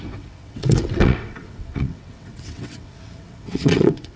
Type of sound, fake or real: fake